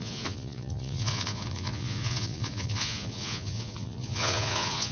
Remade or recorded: remade